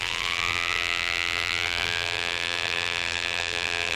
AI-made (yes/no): yes